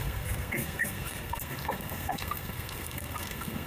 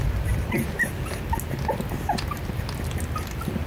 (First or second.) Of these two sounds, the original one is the second